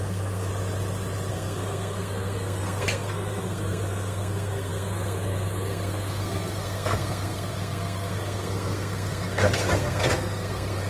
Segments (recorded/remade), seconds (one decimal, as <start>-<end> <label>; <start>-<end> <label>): 0.0-0.5 remade; 0.5-1.3 recorded; 1.3-10.9 remade